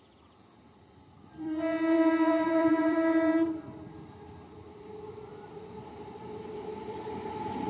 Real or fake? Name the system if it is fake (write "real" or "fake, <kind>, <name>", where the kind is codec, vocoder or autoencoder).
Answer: fake, vocoder, BigVGAN v2